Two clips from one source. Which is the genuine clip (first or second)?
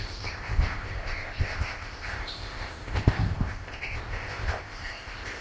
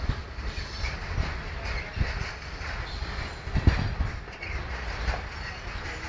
second